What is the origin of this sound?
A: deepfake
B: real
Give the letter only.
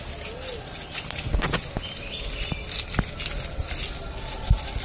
B